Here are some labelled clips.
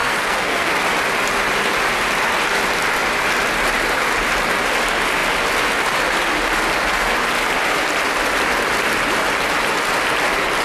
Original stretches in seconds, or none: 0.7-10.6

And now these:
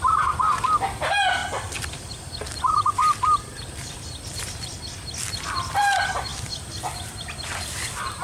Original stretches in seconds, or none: 0.0-1.4; 2.2-3.0; 4.8-8.2

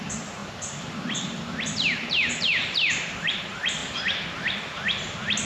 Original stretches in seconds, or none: 3.8-5.5